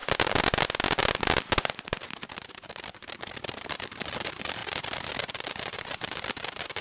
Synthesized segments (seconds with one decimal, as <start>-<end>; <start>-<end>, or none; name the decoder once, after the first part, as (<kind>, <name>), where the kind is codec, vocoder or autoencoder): none